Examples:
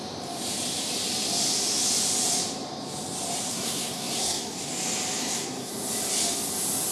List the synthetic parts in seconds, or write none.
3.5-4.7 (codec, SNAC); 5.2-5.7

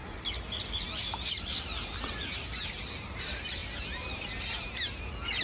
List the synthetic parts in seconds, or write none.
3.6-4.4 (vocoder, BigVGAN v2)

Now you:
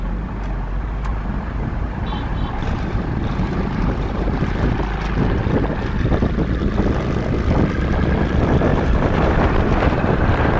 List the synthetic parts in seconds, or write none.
1.1-1.8 (vocoder, BigVGAN v2); 2.3-4.7; 8.7-10.6